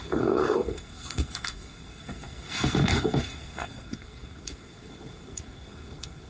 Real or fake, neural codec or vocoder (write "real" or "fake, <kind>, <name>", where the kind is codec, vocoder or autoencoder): fake, codec, SNAC